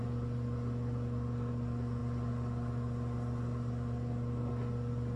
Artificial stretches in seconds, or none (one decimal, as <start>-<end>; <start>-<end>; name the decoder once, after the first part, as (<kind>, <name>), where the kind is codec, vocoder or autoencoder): none